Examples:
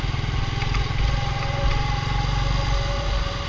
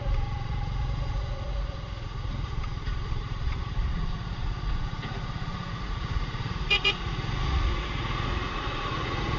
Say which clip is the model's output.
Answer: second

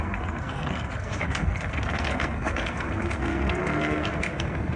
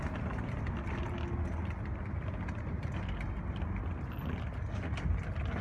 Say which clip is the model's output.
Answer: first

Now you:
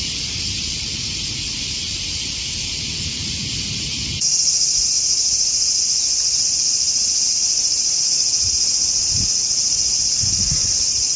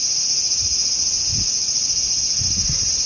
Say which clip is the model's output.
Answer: first